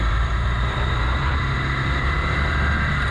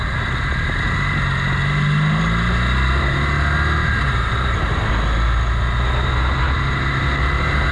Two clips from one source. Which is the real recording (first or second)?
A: second